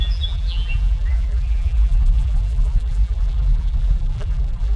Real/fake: fake